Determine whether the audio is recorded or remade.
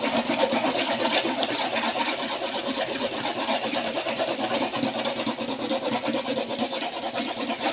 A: recorded